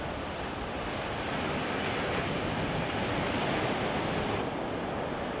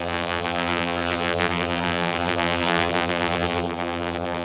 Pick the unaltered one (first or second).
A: first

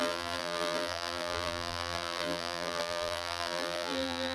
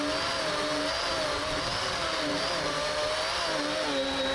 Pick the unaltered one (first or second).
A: second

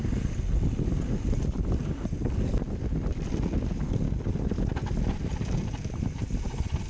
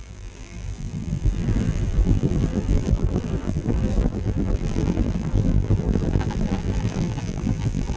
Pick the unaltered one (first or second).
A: first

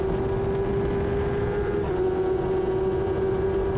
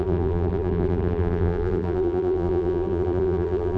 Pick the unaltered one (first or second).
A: first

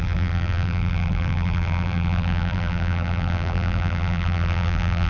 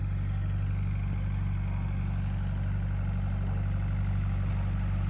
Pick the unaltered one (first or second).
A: second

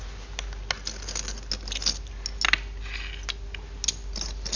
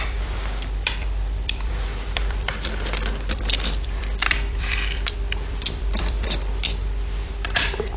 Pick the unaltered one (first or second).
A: first